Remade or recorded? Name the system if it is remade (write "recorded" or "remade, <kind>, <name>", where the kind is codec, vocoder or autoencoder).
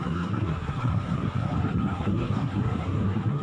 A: remade, codec, SNAC